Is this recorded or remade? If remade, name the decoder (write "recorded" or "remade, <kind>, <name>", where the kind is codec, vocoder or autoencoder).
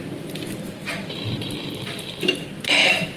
recorded